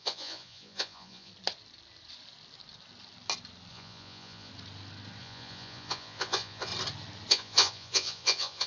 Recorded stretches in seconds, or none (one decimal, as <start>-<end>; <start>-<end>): 1.3-3.7; 4.5-5.2; 6.7-7.3